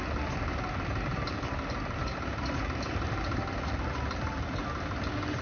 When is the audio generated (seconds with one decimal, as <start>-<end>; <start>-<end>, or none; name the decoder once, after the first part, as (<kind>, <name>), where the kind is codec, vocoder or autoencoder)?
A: 0.0-4.6 (vocoder, BigVGAN v2)